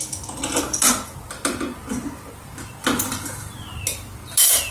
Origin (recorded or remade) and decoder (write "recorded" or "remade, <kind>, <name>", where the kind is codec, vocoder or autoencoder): recorded